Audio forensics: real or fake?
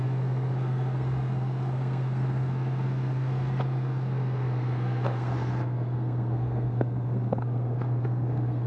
fake